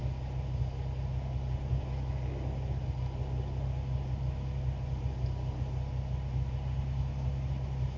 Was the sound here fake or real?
real